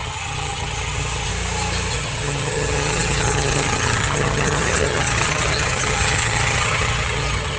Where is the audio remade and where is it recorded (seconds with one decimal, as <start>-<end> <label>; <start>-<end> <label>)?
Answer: 0.0-1.3 remade; 1.3-1.9 recorded; 1.9-7.6 remade